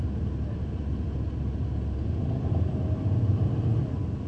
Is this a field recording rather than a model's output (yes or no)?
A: yes